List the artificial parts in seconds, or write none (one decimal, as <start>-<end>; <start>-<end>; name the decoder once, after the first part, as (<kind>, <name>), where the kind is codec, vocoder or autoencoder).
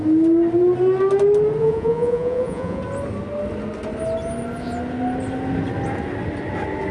1.6-2.8 (vocoder, Vocos)